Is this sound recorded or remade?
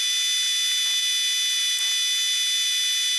recorded